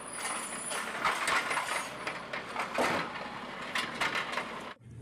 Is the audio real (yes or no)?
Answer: yes